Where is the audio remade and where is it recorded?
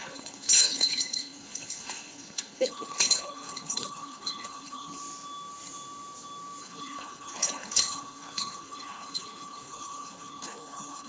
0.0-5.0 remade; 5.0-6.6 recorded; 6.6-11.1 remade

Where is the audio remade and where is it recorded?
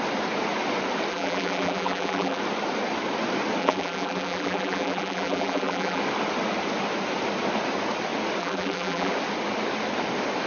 0.0-1.1 recorded; 1.1-2.4 remade; 2.4-3.6 recorded; 3.6-6.0 remade; 6.0-8.4 recorded; 8.4-9.1 remade; 9.1-10.5 recorded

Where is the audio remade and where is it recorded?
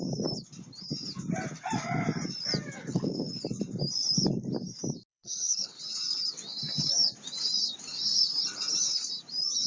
0.0-2.8 recorded; 2.8-3.3 remade; 3.3-5.1 recorded; 5.1-5.8 remade; 5.8-9.7 recorded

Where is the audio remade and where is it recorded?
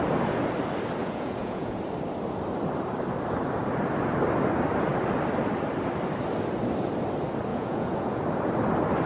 0.0-1.0 recorded; 1.0-1.8 remade; 1.8-7.5 recorded; 7.5-8.2 remade; 8.2-9.1 recorded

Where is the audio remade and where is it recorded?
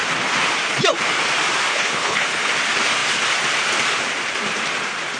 0.0-1.7 recorded; 1.7-2.5 remade; 2.5-5.2 recorded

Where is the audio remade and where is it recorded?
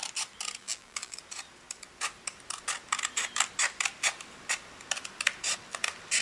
0.0-0.6 recorded; 0.6-1.2 remade; 1.2-6.2 recorded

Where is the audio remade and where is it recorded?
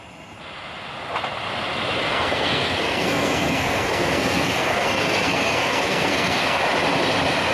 0.0-2.1 recorded; 2.1-6.6 remade; 6.6-7.5 recorded